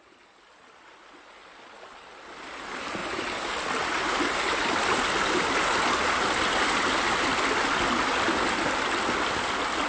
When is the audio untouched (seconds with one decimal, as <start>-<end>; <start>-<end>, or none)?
0.0-9.9